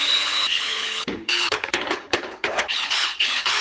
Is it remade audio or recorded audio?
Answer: remade